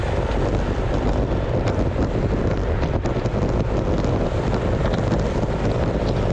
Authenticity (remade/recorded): recorded